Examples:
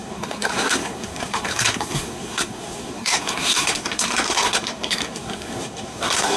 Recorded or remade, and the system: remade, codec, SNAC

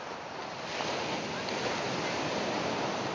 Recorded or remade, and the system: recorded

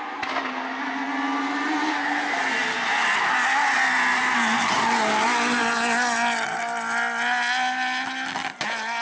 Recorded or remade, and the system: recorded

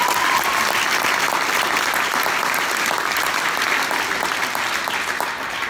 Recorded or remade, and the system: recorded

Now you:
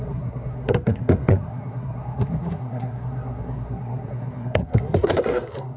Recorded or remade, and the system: remade, codec, SNAC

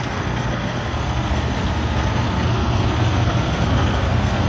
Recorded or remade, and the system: remade, codec, SNAC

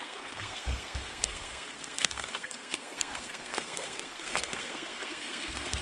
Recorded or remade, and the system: remade, codec, SNAC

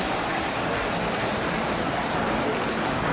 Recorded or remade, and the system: recorded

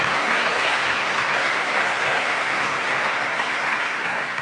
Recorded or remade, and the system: remade, codec, SNAC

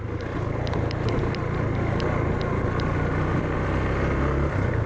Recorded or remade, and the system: recorded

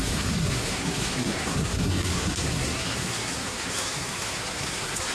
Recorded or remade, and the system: remade, codec, SNAC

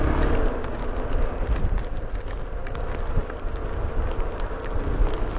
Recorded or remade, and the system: recorded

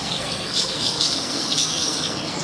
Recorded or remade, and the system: remade, codec, SNAC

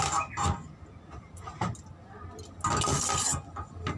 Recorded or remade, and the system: recorded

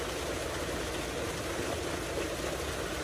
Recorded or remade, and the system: recorded